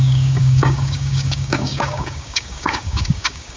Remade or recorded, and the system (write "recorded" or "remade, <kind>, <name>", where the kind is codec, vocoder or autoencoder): remade, codec, DAC